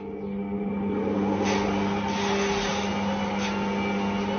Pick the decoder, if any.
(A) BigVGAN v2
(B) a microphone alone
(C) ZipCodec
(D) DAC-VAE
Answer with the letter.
B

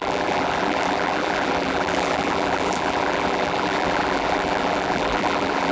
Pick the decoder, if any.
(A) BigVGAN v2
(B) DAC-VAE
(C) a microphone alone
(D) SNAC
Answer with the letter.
A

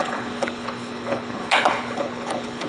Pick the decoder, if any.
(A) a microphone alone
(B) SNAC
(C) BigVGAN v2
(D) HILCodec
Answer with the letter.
D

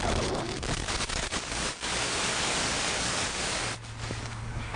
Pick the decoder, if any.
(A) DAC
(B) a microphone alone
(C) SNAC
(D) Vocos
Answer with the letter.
A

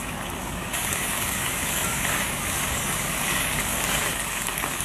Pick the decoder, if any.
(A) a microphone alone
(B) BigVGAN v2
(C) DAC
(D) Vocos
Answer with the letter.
C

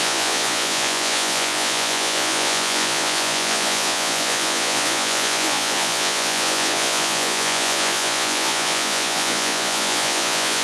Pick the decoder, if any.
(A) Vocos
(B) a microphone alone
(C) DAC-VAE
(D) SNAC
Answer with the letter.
A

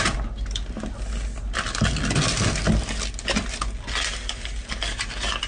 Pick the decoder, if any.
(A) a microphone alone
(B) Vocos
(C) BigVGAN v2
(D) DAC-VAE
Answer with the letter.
A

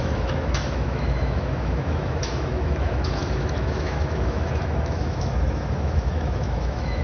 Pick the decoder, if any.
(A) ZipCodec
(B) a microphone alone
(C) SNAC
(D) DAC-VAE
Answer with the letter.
D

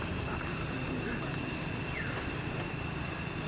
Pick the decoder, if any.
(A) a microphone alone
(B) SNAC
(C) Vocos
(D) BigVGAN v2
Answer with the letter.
D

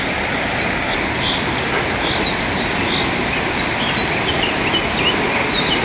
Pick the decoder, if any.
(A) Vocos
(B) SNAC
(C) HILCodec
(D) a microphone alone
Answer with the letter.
D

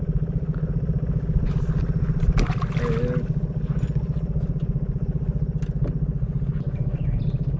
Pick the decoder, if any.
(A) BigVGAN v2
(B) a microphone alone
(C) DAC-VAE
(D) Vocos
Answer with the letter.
B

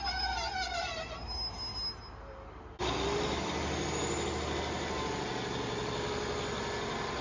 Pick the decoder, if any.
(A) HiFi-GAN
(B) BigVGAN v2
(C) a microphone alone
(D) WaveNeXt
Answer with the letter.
C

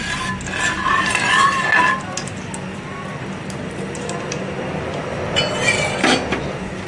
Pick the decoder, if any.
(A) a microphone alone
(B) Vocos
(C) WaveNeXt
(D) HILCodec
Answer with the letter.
A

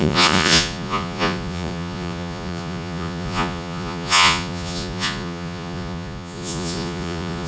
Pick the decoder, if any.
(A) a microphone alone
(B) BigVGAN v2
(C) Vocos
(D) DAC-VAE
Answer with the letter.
C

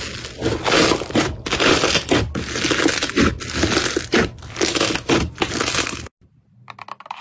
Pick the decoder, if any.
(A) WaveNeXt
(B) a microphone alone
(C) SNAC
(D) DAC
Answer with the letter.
B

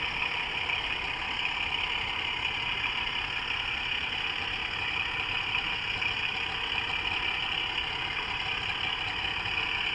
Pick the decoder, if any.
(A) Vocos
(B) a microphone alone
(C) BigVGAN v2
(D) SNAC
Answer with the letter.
B